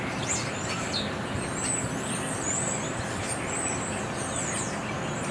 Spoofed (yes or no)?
no